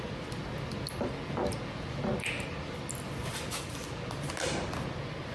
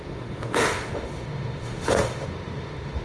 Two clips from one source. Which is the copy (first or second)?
second